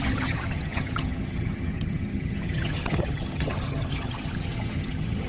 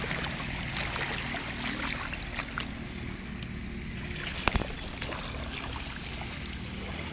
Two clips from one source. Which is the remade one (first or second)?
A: first